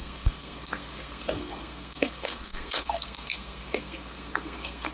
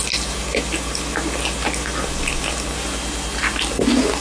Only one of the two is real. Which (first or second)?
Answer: second